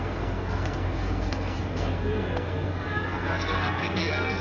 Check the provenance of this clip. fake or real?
fake